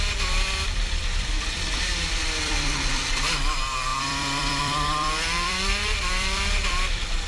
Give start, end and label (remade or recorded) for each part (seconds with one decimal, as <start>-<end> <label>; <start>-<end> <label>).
0.0-7.3 remade